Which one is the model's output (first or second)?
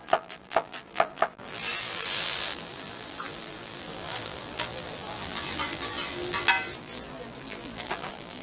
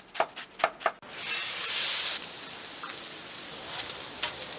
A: first